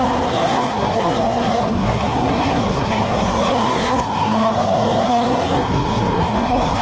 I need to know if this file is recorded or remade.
remade